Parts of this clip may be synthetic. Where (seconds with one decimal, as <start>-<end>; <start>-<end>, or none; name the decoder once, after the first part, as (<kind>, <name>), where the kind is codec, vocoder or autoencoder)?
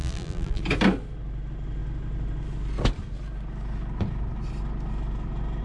0.0-0.6 (vocoder, BigVGAN v2)